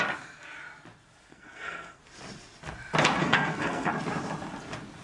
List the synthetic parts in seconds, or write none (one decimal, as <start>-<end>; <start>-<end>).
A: 1.3-2.0; 3.2-3.9